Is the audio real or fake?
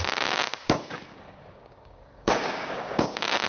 fake